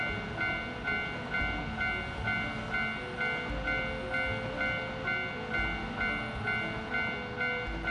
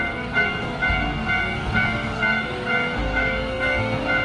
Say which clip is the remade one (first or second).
second